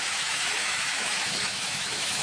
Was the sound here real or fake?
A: fake